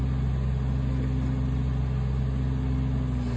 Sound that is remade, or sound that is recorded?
recorded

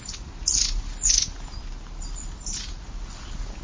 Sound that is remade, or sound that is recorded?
recorded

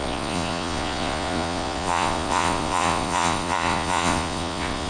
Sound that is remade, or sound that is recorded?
remade